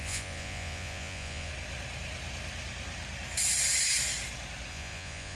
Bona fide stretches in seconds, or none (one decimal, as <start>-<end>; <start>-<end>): 1.5-4.7